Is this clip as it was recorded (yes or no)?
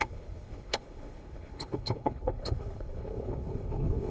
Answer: no